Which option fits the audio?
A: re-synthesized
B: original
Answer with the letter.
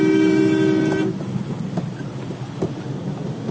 B